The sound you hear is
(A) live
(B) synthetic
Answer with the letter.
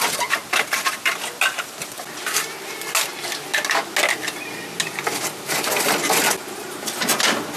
A